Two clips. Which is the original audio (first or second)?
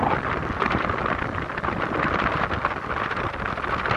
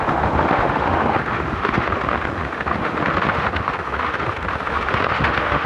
first